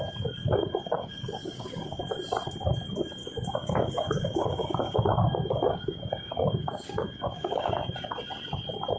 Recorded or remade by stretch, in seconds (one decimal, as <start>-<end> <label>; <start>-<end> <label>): 0.0-0.4 recorded; 0.4-2.0 remade; 2.0-3.2 recorded; 3.2-7.7 remade; 7.7-9.0 recorded